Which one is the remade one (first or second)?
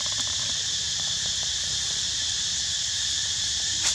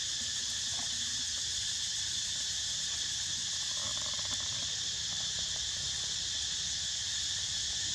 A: first